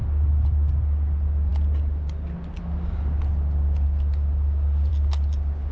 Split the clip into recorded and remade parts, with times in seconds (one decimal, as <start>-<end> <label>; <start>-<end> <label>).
0.0-5.7 recorded